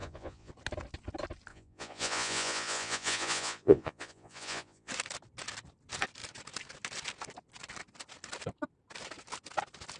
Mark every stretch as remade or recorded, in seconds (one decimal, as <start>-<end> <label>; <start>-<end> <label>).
0.0-0.5 remade; 0.5-1.5 recorded; 1.5-4.9 remade; 4.9-10.0 recorded